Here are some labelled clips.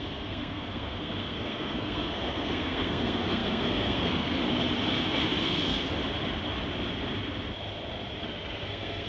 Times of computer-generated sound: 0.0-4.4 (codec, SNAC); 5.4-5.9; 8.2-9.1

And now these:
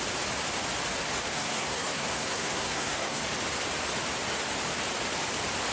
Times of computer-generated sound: 1.3-3.2 (codec, SNAC)

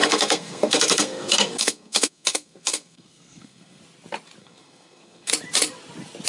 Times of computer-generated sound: 0.0-3.8 (codec, SNAC); 4.4-5.3

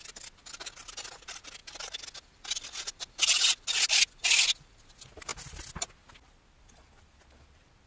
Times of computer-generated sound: none

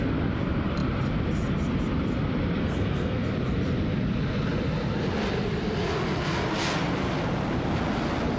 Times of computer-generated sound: 2.6-3.2 (codec, SNAC)